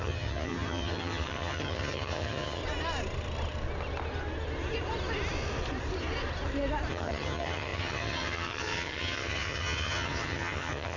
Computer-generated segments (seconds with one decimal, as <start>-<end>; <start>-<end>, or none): 0.0-2.6; 6.9-11.0